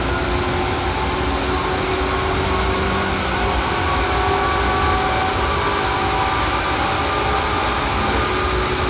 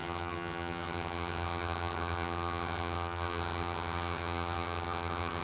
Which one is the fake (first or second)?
second